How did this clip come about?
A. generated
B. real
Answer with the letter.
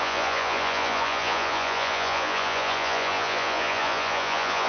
A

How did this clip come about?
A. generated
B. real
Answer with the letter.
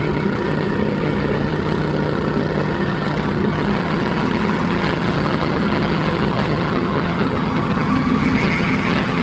A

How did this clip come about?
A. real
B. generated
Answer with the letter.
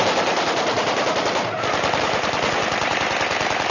A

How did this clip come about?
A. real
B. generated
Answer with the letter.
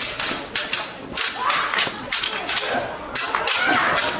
A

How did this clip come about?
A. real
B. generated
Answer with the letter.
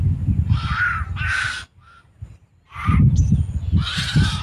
A